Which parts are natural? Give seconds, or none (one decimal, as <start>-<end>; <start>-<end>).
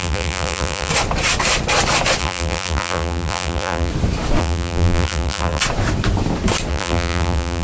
0.9-2.2; 3.9-4.4; 5.6-6.7